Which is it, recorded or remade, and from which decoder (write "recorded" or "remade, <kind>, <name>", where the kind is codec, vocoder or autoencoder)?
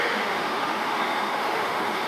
remade, autoencoder, DAC-VAE